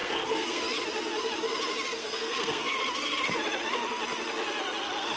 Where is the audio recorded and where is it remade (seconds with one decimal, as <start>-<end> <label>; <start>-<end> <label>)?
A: 0.0-0.6 remade; 0.6-2.0 recorded; 2.0-2.8 remade; 2.8-5.2 recorded